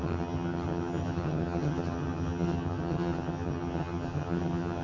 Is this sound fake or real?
fake